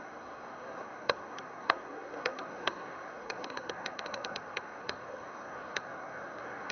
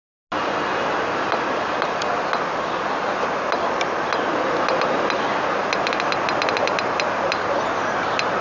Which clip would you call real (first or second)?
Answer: second